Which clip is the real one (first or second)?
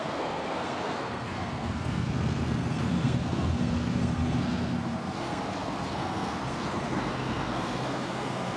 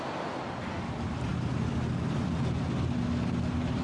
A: second